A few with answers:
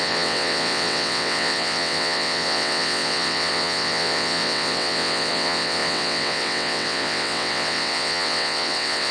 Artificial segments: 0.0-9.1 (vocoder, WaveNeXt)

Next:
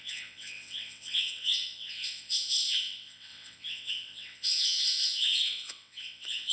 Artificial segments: 0.0-6.5 (vocoder, WaveNeXt)

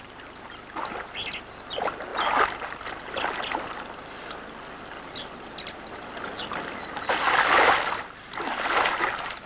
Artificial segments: none

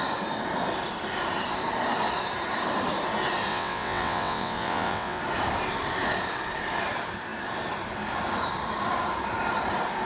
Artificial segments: 3.5-5.2 (vocoder, WaveNeXt)

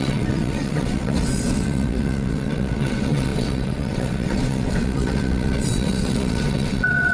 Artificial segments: 0.0-7.1 (vocoder, WaveNeXt)

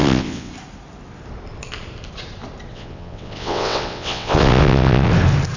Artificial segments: 0.0-0.5 (vocoder, WaveNeXt); 2.7-5.1